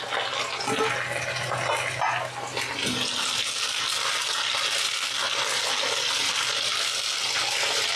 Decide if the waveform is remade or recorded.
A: recorded